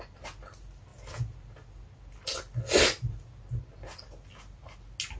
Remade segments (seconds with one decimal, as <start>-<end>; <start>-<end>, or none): none